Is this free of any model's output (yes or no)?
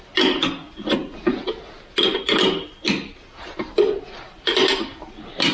yes